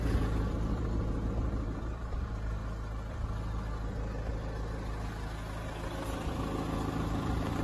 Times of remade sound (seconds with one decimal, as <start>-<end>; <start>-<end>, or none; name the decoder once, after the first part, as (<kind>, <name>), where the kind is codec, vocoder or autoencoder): 0.0-2.6 (vocoder, BigVGAN v2); 6.9-7.6